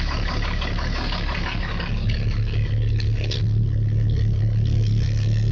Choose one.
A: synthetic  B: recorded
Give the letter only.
A